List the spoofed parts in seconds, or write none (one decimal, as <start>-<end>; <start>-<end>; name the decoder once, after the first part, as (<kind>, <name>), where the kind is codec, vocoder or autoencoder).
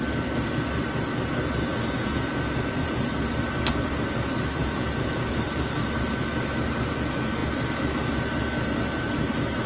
1.7-3.0 (vocoder, Vocos); 4.6-5.4